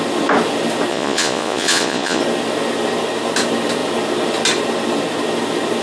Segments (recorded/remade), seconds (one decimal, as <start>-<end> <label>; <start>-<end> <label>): 0.0-0.9 recorded; 0.9-2.2 remade; 2.2-5.8 recorded